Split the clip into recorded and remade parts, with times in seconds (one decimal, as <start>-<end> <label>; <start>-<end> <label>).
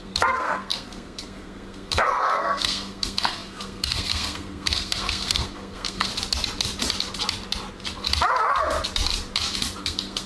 0.0-6.1 remade; 6.1-9.8 recorded; 9.8-10.3 remade